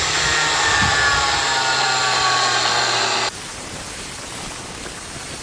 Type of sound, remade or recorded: recorded